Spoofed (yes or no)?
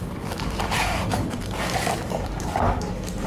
yes